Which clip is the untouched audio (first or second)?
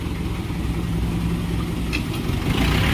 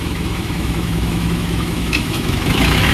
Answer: first